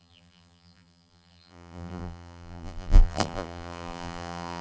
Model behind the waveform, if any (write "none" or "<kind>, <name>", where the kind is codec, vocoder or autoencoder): vocoder, BigVGAN v2